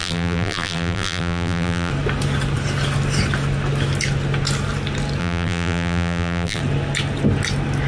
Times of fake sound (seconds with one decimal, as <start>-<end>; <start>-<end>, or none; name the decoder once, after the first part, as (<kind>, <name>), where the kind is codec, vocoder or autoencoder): 0.0-1.9 (vocoder, BigVGAN v2); 5.2-6.6